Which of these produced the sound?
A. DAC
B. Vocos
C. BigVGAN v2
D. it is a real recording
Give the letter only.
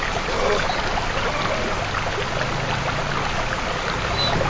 D